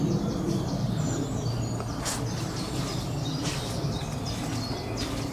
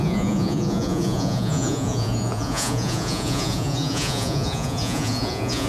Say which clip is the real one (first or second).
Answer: first